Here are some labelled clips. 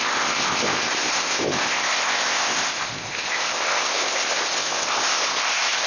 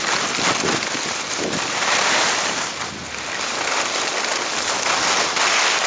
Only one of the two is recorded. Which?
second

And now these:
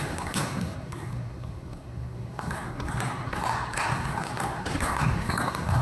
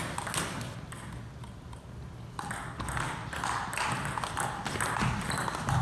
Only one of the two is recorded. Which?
second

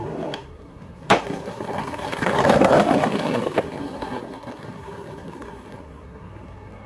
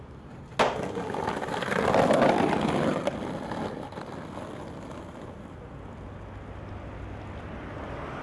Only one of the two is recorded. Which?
second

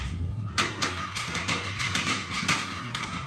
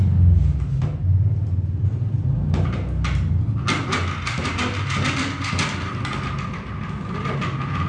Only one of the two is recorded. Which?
second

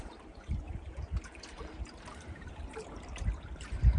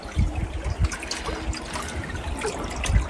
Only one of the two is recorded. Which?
second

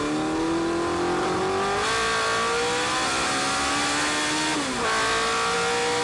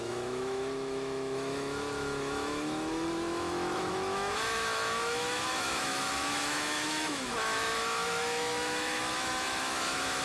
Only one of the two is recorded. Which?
first